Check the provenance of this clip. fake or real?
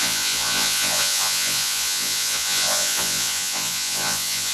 fake